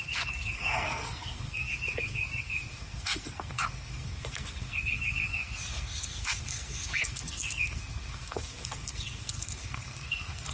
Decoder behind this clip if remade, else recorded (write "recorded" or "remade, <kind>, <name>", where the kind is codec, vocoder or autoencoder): remade, codec, SNAC